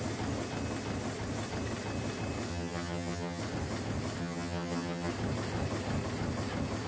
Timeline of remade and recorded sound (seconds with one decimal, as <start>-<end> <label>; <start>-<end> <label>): 0.0-2.5 recorded; 2.5-3.4 remade; 3.4-4.2 recorded; 4.2-5.1 remade; 5.1-6.9 recorded